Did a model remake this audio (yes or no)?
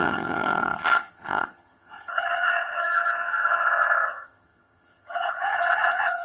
yes